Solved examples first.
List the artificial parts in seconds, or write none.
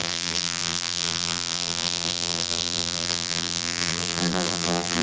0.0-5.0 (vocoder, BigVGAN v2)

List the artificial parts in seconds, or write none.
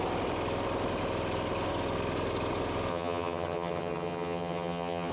2.9-5.1 (vocoder, HiFi-GAN)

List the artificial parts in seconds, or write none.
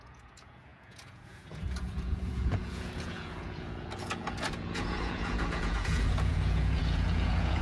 0.0-7.6 (vocoder, Vocos)